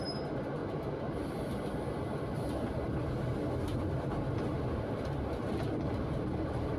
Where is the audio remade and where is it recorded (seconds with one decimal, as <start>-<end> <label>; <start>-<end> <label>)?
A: 0.0-0.6 recorded; 0.6-1.6 remade; 1.6-6.8 recorded